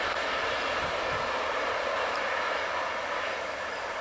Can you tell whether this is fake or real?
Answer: real